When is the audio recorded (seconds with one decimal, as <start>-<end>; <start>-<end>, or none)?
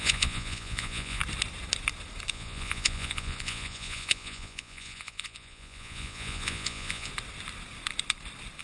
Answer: 1.2-2.3; 7.1-8.6